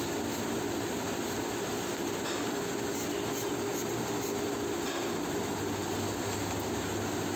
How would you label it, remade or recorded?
recorded